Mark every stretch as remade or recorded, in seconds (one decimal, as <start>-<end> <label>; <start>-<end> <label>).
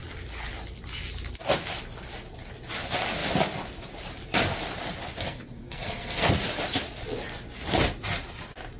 0.0-5.2 recorded; 5.2-6.3 remade; 6.3-8.8 recorded